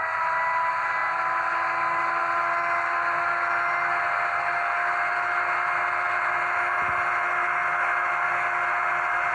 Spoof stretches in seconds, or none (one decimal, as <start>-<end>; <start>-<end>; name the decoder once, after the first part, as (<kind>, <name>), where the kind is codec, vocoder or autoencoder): none